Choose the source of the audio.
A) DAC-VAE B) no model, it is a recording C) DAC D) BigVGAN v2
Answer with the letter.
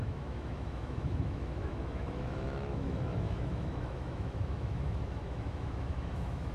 A